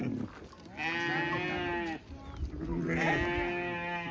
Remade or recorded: recorded